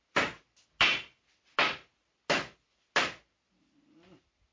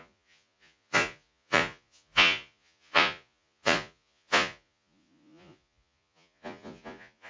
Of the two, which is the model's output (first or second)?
second